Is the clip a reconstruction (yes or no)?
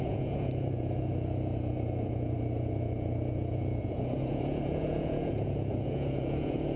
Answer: yes